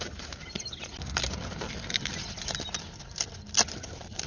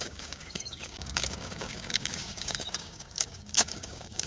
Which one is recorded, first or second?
first